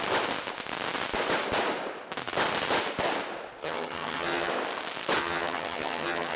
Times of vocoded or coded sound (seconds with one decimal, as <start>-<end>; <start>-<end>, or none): 3.6-4.5; 5.2-6.4